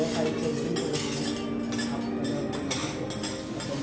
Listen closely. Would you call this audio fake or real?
real